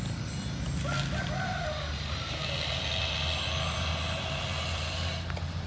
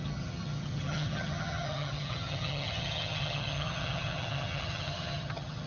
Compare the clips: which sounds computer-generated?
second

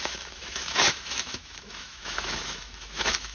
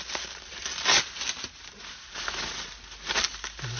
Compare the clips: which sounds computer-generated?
first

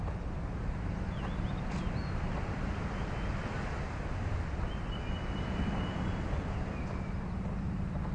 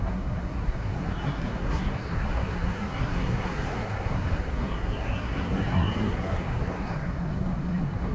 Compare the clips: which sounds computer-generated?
second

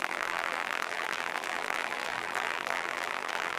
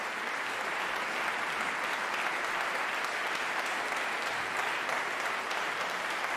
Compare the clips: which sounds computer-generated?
first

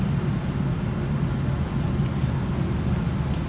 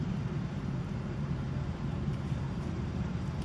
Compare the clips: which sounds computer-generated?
second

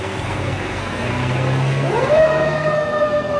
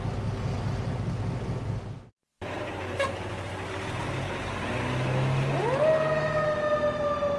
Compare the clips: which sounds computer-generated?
first